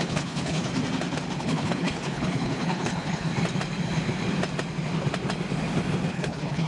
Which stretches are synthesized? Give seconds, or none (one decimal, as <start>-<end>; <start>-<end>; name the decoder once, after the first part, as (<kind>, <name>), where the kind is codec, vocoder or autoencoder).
0.0-0.7 (codec, HILCodec); 1.4-3.3; 6.1-6.7